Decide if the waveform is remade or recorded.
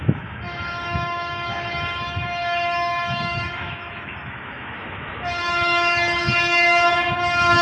remade